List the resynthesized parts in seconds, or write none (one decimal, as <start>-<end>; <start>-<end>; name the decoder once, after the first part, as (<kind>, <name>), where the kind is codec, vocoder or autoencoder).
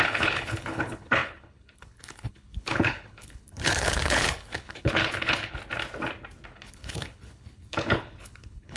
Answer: 0.0-5.6 (codec, HILCodec); 6.5-8.8